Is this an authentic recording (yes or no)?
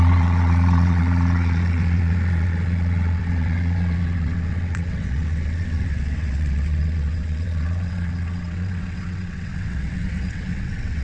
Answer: no